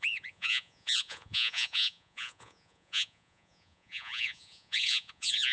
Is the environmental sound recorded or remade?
remade